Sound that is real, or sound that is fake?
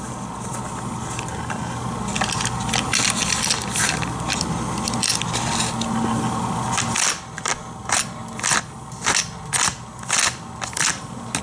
real